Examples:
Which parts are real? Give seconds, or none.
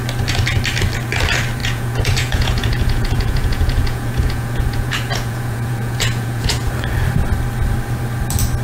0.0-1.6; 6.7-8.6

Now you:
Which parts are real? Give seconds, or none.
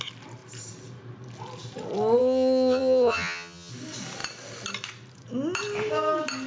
0.0-2.2; 3.7-6.5